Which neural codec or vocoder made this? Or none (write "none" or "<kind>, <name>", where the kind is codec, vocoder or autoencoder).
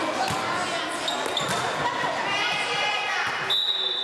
none